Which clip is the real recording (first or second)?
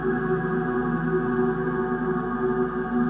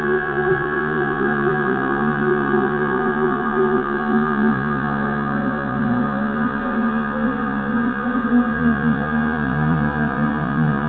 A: first